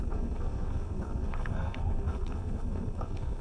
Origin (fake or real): fake